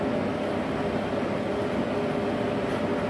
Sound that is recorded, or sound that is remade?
recorded